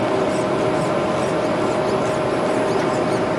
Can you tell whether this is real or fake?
real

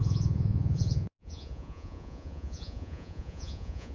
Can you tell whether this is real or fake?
fake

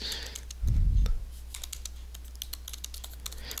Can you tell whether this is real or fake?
real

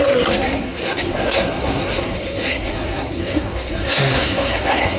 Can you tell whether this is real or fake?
fake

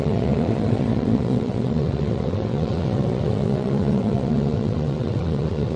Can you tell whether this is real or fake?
fake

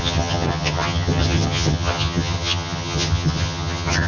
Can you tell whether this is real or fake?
fake